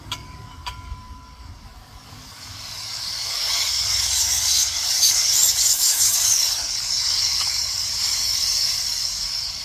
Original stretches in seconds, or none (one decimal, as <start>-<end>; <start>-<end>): none

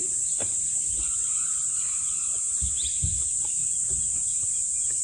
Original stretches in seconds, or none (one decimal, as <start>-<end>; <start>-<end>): 2.7-5.0

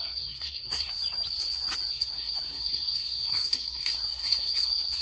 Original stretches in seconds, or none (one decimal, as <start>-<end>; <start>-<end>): 1.0-1.9

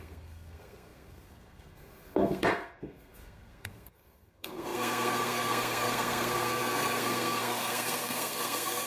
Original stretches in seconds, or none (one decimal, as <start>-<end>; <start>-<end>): none

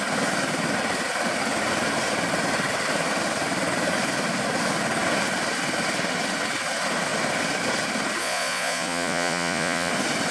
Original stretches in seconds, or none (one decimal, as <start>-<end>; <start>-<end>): 0.0-8.2; 9.9-10.3

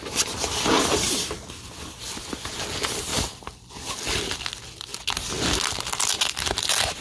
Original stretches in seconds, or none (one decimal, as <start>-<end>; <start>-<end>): 0.0-7.0

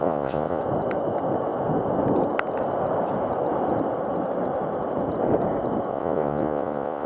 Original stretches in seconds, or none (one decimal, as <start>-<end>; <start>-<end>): 0.6-5.9

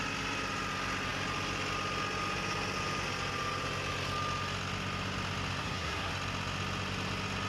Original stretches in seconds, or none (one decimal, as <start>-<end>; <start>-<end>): 0.0-5.6; 6.1-7.5